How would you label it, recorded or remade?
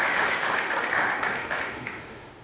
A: remade